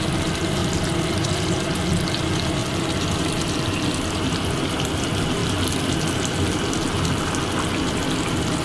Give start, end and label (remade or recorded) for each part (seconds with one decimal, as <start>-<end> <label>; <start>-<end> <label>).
0.0-0.6 recorded; 0.6-1.4 remade; 1.4-2.6 recorded; 2.6-3.8 remade; 3.8-5.4 recorded; 5.4-7.3 remade; 7.3-8.6 recorded